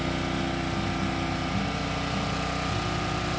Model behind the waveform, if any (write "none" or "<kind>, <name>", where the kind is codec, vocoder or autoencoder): none